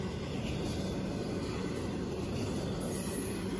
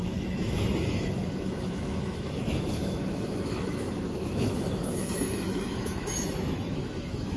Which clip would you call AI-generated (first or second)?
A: second